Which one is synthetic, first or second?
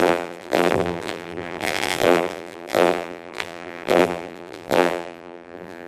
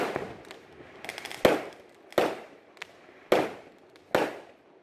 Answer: first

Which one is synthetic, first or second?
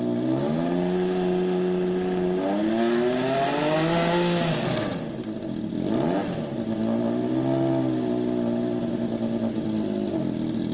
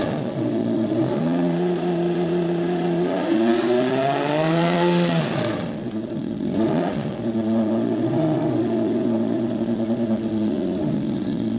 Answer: second